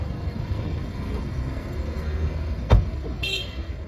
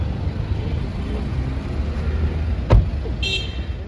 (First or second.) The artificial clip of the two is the first